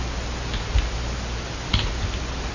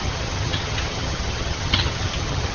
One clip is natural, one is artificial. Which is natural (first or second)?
first